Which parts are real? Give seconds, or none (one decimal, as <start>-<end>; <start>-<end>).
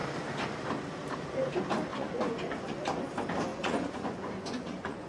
0.0-1.9; 2.8-3.5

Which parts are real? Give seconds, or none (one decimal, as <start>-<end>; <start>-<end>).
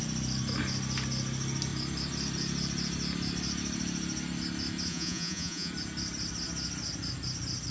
0.0-4.9; 5.7-7.7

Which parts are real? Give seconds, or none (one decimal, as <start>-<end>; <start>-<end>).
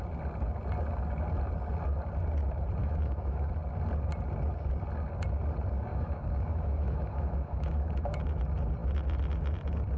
0.0-2.8; 3.5-5.9; 8.2-10.0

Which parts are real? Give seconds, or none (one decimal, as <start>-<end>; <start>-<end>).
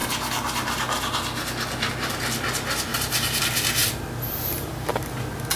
0.0-2.9; 3.4-3.8; 5.1-5.6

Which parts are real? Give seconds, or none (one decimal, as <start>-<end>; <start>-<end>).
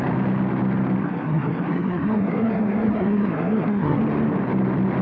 0.0-1.0; 4.0-5.0